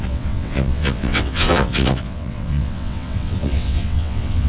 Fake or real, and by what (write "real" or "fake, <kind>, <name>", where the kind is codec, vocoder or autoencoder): fake, vocoder, WaveNeXt